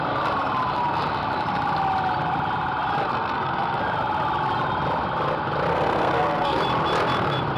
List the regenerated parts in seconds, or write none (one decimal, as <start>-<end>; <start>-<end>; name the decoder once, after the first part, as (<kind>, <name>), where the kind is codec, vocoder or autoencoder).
3.1-3.8 (codec, SNAC); 5.7-6.6